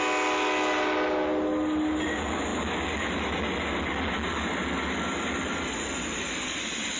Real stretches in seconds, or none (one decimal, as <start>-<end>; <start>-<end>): 0.0-7.0